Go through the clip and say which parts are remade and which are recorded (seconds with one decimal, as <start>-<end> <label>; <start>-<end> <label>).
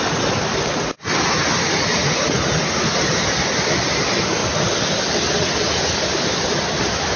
0.0-7.2 recorded